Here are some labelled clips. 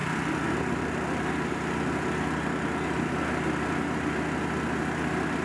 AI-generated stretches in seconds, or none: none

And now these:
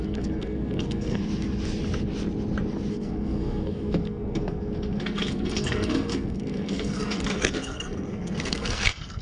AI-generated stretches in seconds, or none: 0.0-1.2 (codec, SNAC); 2.9-9.2

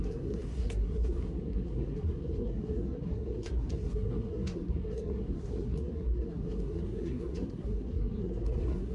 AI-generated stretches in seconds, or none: 0.0-8.9 (codec, SNAC)